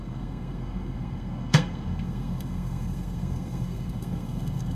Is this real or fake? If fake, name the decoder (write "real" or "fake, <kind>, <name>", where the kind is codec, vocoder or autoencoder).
fake, codec, SNAC